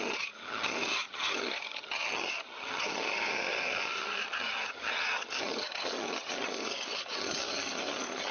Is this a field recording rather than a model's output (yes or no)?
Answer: no